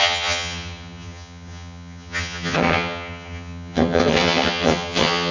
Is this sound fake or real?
fake